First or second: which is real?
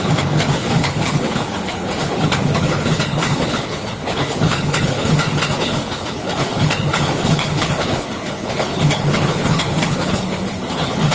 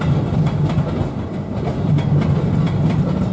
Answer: second